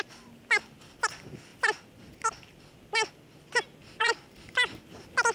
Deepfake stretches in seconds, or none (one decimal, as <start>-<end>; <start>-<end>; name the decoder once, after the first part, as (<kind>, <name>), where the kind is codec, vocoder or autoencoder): 3.8-4.8 (vocoder, BigVGAN v2)